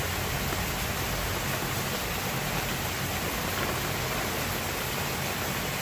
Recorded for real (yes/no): yes